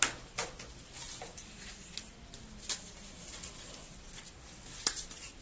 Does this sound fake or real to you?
real